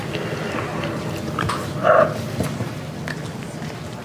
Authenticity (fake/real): real